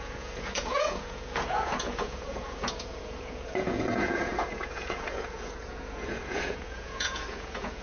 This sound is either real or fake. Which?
fake